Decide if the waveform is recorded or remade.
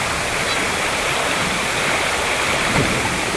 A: recorded